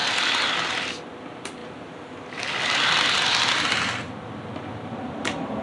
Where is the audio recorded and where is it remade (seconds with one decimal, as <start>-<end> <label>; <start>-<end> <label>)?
0.0-5.6 recorded